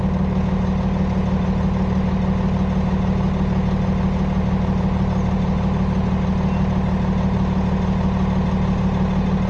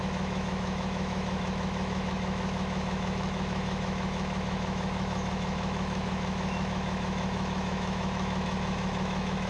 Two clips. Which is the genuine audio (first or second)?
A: first